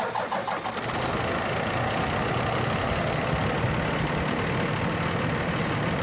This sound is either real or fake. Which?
real